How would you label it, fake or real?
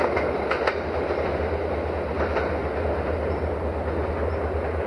real